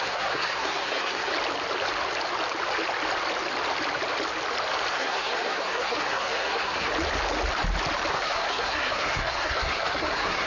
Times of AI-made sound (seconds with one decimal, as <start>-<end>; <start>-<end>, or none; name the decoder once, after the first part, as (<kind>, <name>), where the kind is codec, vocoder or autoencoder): 0.0-1.3 (codec, SNAC); 4.9-6.9; 8.1-10.5